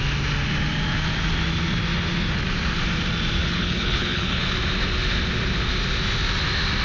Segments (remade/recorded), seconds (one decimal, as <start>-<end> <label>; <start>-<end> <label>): 0.0-3.4 recorded; 3.4-4.4 remade; 4.4-6.8 recorded